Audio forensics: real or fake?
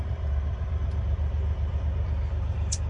fake